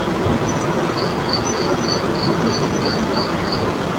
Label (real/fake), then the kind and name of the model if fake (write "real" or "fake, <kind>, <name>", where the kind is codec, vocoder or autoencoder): real